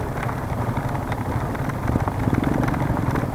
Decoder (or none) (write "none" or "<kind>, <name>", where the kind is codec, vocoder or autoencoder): none